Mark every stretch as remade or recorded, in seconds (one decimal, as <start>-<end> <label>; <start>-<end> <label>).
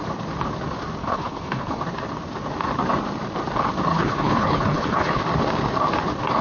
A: 0.0-1.0 recorded; 1.0-1.8 remade; 1.8-3.9 recorded; 3.9-5.2 remade; 5.2-6.4 recorded